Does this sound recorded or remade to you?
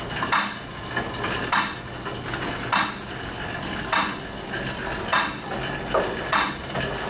recorded